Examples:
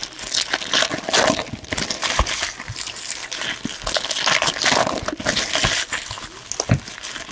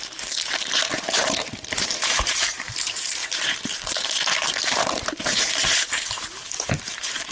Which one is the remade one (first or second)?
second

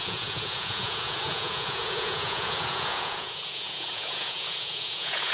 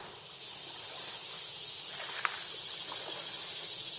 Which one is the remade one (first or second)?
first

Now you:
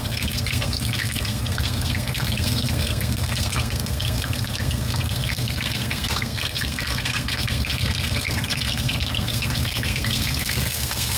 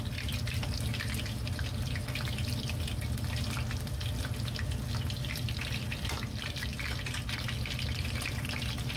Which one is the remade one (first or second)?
first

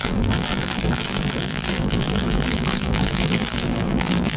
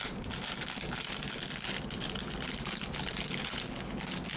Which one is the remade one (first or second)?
first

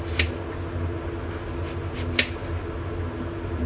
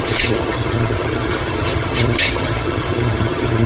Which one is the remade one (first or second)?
second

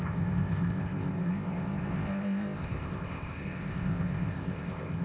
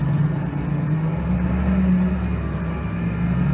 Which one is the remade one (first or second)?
first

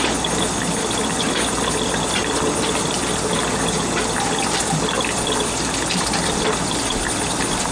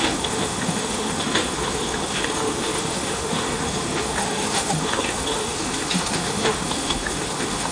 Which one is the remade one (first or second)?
second